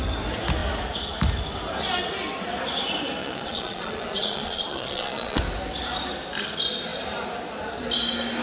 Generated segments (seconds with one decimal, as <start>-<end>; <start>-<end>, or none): 3.2-5.4